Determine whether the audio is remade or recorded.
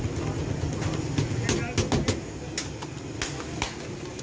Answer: recorded